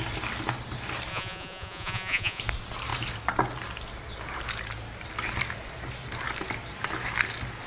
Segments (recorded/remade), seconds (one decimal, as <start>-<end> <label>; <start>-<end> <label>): 0.0-1.1 recorded; 1.1-2.4 remade; 2.4-7.7 recorded